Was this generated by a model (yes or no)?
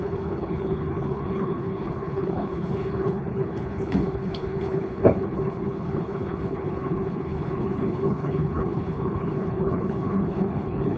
yes